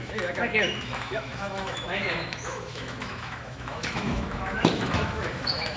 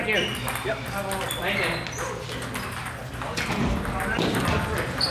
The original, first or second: second